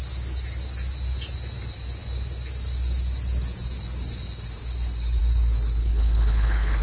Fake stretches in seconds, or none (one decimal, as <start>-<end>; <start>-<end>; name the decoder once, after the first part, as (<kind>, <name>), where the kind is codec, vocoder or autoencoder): 5.8-6.8 (codec, HILCodec)